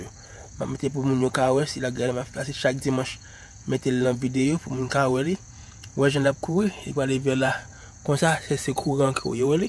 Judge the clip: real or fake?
fake